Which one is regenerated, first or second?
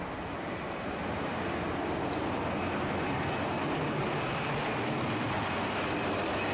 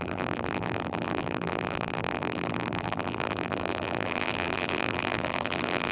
second